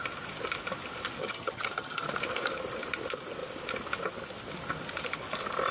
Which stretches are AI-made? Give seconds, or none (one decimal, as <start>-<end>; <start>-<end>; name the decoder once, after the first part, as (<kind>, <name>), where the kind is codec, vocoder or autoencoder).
1.2-2.0 (vocoder, HiFi-GAN)